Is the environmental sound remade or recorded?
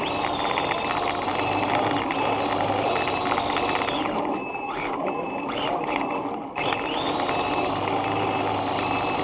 recorded